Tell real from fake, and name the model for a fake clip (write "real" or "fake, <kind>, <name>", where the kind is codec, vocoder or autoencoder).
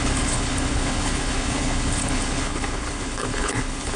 fake, codec, HILCodec